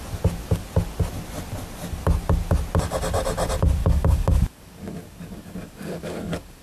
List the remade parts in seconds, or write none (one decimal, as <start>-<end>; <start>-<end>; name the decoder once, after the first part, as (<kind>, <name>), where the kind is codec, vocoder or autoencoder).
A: 3.8-6.6 (codec, DAC)